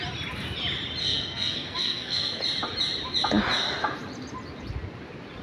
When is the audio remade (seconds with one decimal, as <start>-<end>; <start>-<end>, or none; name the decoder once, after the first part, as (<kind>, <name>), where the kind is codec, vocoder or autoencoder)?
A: 1.0-2.4 (codec, SNAC)